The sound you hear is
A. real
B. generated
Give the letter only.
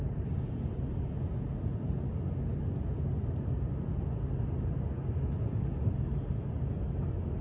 A